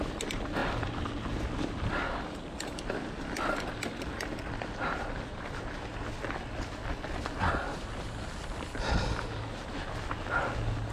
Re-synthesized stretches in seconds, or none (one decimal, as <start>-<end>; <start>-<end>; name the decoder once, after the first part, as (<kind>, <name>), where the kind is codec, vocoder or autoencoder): none